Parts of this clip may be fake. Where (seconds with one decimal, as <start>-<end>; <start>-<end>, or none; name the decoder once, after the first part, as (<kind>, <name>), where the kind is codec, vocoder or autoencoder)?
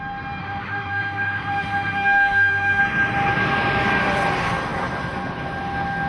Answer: 0.4-2.8 (autoencoder, DAC-VAE)